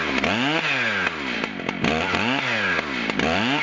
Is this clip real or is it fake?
real